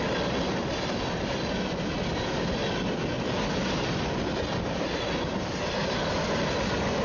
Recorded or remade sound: recorded